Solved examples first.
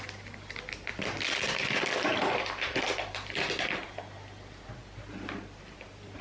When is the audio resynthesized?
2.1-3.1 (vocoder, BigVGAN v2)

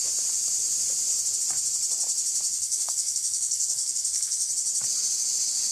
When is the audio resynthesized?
2.5-4.5 (codec, SNAC)

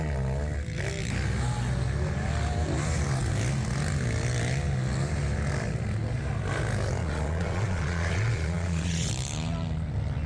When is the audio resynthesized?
7.0-9.1 (vocoder, Vocos)

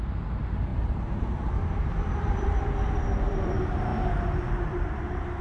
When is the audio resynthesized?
0.0-3.9 (vocoder, BigVGAN v2); 4.5-5.4

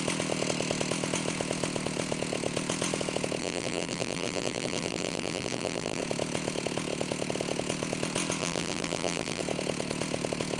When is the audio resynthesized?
3.4-6.0 (vocoder, BigVGAN v2); 8.4-9.4

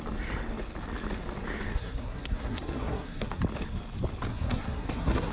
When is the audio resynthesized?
1.7-3.4 (codec, SNAC); 4.3-5.3

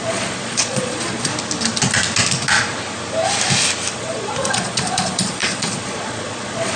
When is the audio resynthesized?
0.0-1.3 (vocoder, Vocos); 3.9-6.8